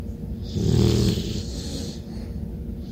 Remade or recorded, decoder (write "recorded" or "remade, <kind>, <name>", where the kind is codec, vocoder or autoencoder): recorded